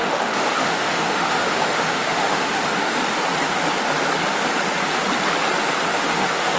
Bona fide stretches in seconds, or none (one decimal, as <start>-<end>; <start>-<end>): 3.0-5.9